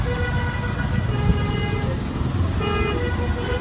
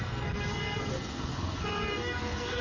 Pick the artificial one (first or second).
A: second